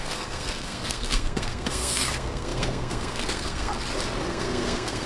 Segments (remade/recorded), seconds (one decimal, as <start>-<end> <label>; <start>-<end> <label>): 0.0-3.7 remade; 3.7-4.2 recorded; 4.2-5.1 remade